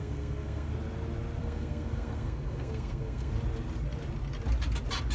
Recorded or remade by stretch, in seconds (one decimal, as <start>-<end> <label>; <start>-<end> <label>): 0.0-0.7 remade; 0.7-1.4 recorded; 1.4-3.3 remade; 3.3-5.1 recorded